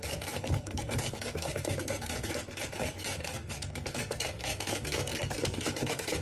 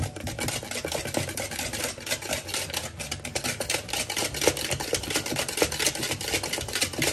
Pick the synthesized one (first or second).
first